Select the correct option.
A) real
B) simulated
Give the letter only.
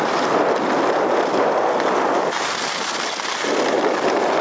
A